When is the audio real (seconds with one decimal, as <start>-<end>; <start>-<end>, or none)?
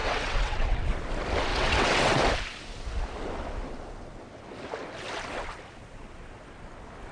0.8-1.5; 2.2-7.1